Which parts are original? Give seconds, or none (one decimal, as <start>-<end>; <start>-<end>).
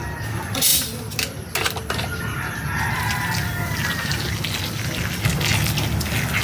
0.0-6.4